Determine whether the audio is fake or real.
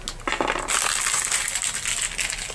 real